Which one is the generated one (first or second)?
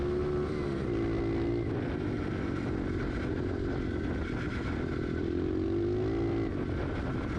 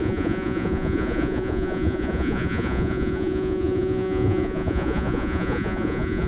second